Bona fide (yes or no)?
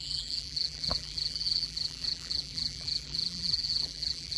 no